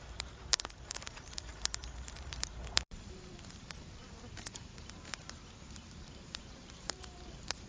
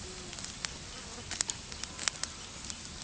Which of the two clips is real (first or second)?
second